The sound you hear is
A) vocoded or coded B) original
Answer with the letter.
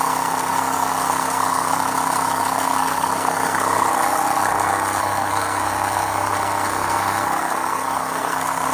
A